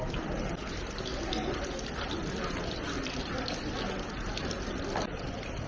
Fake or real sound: real